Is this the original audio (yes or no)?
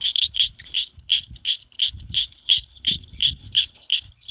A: no